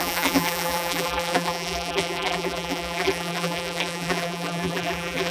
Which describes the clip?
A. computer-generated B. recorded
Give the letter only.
A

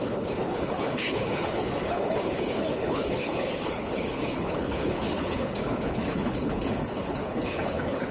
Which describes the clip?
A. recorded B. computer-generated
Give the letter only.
B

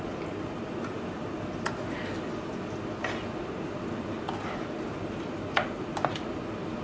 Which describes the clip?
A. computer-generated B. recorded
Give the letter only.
B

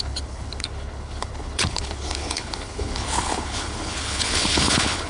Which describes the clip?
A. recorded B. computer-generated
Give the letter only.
B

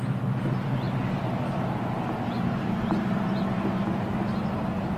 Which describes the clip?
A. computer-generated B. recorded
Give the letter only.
B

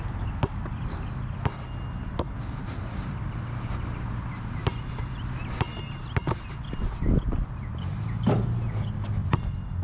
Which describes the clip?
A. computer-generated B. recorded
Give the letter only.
B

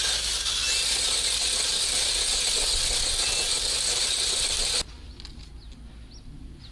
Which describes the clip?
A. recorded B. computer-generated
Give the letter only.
A